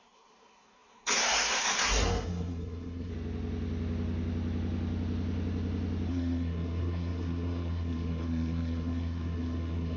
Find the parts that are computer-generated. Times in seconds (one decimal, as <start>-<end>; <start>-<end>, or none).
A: 0.0-3.1; 6.1-10.0